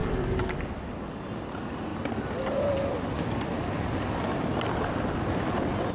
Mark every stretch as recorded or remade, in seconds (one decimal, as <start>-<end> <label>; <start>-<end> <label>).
0.0-0.7 remade; 0.7-5.9 recorded